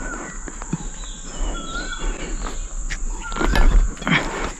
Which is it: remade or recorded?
recorded